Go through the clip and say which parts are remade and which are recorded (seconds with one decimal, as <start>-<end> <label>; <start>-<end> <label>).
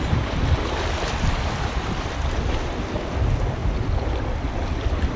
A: 0.0-5.2 recorded